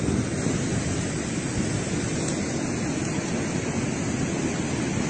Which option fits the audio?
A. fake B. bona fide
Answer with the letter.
B